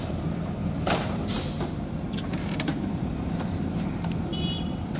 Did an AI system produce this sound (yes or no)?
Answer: yes